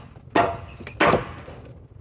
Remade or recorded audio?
recorded